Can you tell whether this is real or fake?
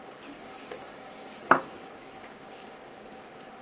fake